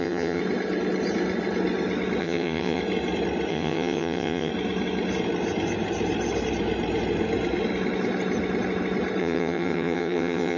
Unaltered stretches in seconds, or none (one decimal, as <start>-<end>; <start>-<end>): 0.4-2.2; 2.8-3.5; 4.5-9.2